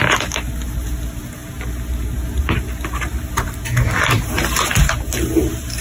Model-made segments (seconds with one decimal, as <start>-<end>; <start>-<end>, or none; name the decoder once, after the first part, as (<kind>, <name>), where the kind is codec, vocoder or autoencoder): none